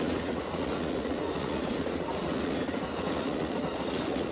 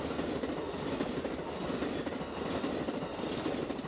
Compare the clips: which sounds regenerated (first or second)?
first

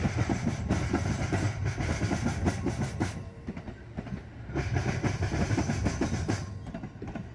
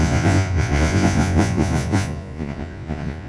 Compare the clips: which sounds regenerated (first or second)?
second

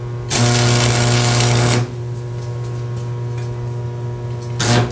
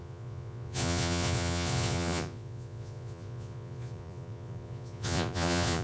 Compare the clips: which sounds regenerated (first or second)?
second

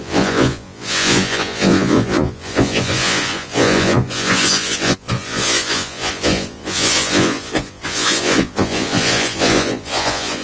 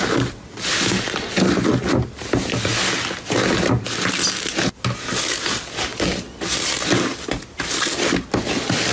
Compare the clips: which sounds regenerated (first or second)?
first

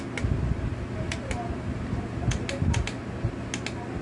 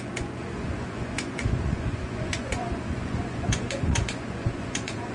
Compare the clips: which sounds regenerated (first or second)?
second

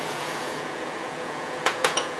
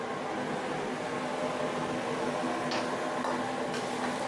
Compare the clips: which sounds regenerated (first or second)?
first